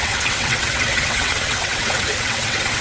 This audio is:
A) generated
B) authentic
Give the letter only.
A